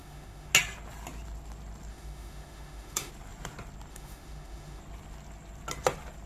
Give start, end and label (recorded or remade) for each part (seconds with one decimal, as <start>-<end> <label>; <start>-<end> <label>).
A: 0.0-0.5 remade; 0.5-1.9 recorded; 1.9-3.1 remade; 3.1-3.9 recorded; 3.9-4.8 remade; 4.8-6.3 recorded

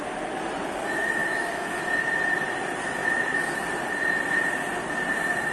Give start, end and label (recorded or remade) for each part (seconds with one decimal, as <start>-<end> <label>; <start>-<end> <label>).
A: 0.0-1.2 recorded; 1.2-1.8 remade; 1.8-3.0 recorded; 3.0-3.6 remade; 3.6-5.5 recorded

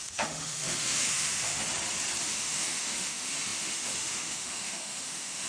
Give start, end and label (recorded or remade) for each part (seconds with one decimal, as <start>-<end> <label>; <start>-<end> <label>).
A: 0.0-1.6 remade; 1.6-2.2 recorded; 2.2-5.5 remade

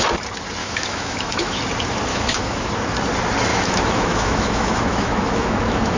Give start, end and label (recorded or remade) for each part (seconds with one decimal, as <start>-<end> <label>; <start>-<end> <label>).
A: 0.0-0.6 recorded; 0.6-1.6 remade; 1.6-2.1 recorded; 2.1-2.7 remade; 2.7-3.5 recorded; 3.5-6.0 remade

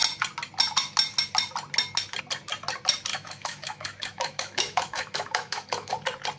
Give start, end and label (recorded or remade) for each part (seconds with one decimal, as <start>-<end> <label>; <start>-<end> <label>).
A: 0.0-3.1 recorded; 3.1-5.9 remade; 5.9-6.4 recorded

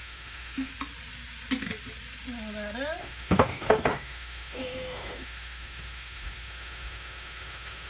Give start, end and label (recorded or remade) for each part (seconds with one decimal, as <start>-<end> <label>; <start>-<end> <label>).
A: 0.0-0.7 remade; 0.7-3.0 recorded; 3.0-7.9 remade